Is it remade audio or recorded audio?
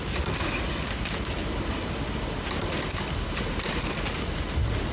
recorded